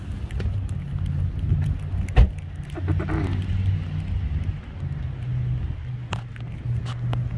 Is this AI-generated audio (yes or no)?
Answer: no